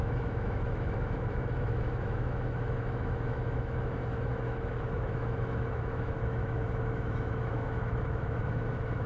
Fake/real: fake